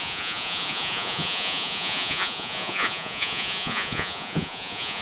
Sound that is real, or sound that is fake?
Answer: fake